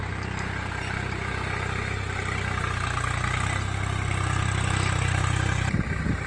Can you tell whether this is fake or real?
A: real